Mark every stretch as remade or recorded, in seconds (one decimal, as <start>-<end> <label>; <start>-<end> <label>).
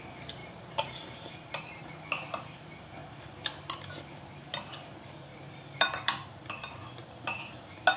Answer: 0.0-0.4 recorded; 0.4-1.9 remade; 1.9-5.3 recorded; 5.3-6.3 remade; 6.3-8.0 recorded